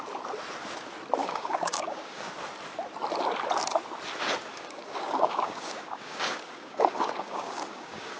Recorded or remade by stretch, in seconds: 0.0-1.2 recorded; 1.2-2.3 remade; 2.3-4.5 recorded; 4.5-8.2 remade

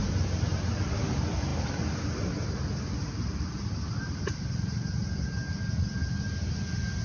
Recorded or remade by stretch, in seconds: 0.0-7.0 recorded

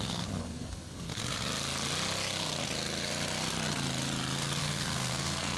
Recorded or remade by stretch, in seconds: 0.0-1.2 remade; 1.2-4.6 recorded; 4.6-5.6 remade

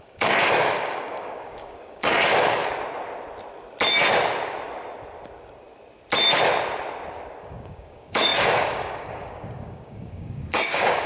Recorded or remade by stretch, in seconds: 0.0-2.6 remade; 2.6-7.4 recorded; 7.4-11.1 remade

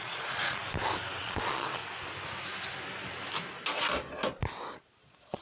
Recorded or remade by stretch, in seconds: 0.0-0.6 remade; 0.6-1.2 recorded; 1.2-1.8 remade; 1.8-5.0 recorded; 5.0-5.4 remade

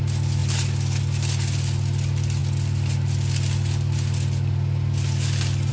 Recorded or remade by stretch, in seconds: 0.0-5.7 recorded